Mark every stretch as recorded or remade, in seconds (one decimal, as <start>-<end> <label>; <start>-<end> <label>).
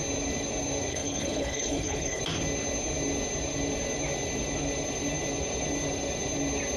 0.0-0.9 recorded; 0.9-2.2 remade; 2.2-6.8 recorded